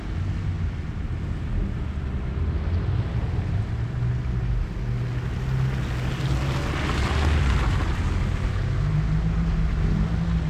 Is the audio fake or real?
real